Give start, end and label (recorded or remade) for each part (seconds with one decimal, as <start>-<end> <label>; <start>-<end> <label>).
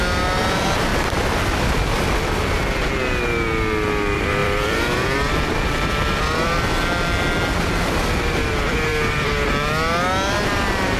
0.0-0.9 recorded; 0.9-2.9 remade; 2.9-4.4 recorded; 4.4-6.6 remade; 6.6-11.0 recorded